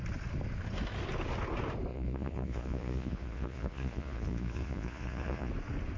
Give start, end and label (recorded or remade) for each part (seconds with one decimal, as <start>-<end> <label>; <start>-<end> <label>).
0.0-1.9 recorded; 1.9-5.5 remade; 5.5-6.0 recorded